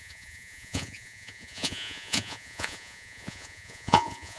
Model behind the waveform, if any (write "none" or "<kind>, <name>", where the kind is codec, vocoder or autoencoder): vocoder, Vocos